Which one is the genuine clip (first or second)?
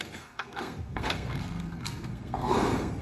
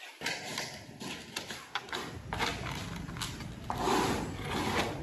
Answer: second